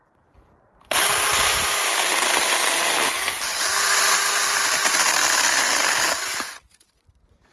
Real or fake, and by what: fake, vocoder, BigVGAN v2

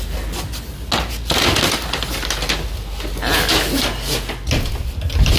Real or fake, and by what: real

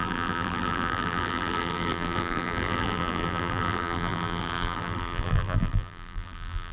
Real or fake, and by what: fake, vocoder, BigVGAN v2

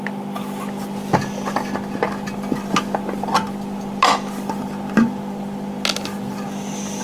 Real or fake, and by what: real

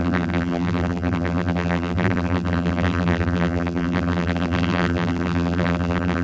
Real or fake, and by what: fake, vocoder, BigVGAN v2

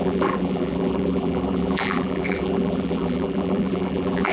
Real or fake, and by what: fake, vocoder, BigVGAN v2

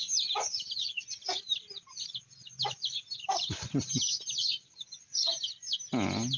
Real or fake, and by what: real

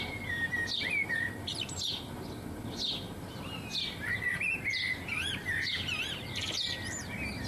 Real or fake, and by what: real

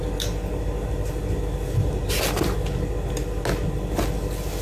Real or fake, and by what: real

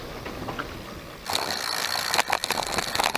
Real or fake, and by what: real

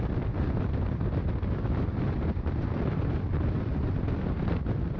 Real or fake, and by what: fake, vocoder, BigVGAN v2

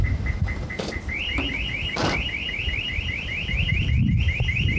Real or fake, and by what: fake, vocoder, BigVGAN v2